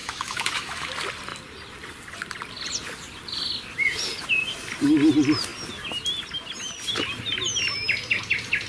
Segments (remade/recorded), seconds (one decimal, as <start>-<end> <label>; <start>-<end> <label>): 0.0-0.9 remade; 0.9-8.7 recorded